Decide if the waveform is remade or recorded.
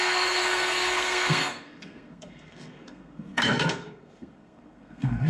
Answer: remade